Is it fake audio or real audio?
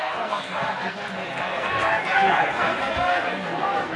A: fake